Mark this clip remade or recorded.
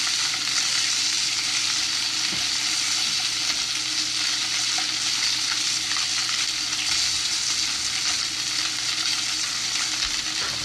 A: recorded